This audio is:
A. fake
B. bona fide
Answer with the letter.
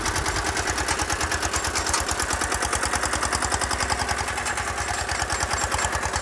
B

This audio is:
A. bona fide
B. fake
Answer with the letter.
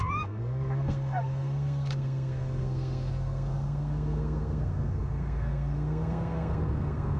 B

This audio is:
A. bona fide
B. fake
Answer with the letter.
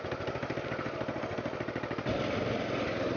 A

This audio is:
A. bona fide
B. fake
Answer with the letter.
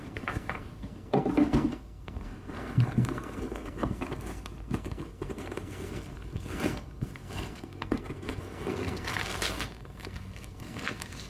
B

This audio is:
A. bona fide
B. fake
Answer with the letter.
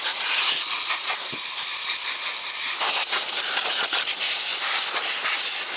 A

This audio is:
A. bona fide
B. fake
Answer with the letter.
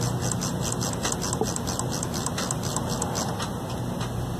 A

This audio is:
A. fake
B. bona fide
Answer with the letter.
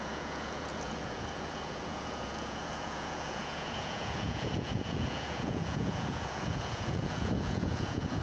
A